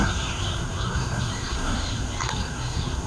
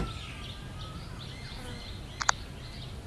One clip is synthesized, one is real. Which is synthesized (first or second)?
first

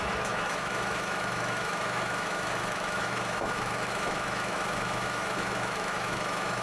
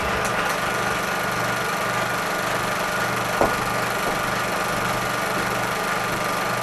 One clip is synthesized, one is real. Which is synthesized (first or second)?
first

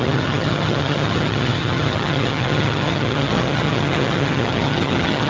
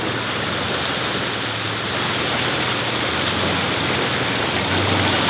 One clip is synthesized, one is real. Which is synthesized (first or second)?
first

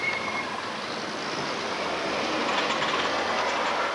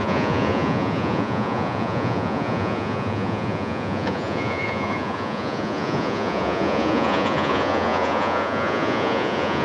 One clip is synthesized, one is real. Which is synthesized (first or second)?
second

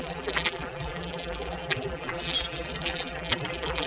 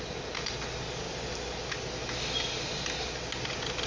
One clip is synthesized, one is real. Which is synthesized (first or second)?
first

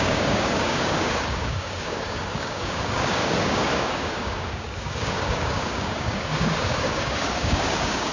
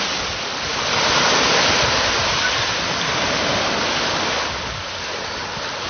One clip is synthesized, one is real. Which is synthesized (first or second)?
first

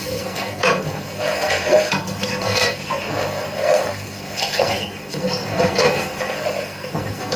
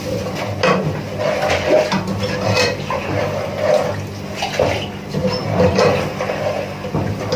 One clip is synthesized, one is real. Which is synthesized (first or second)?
first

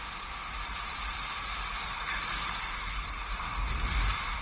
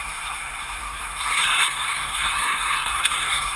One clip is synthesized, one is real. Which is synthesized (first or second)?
second